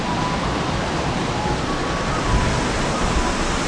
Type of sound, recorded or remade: recorded